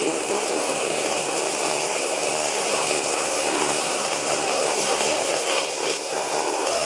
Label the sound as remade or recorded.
remade